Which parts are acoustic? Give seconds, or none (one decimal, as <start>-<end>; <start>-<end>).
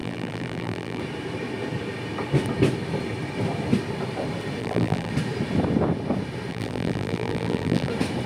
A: 1.0-4.6; 5.1-6.5; 7.9-8.3